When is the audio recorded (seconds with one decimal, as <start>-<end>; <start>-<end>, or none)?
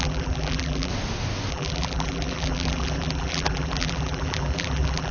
0.9-1.5